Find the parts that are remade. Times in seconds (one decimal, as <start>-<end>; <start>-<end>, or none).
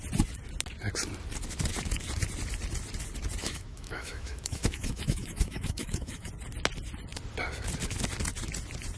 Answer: 3.4-6.3